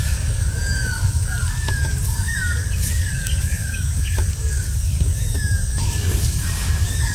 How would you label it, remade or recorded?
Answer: remade